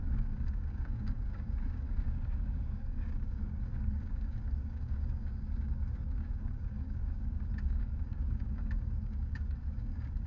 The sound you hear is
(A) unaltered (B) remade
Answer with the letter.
B